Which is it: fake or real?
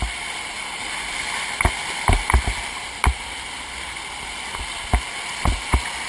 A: real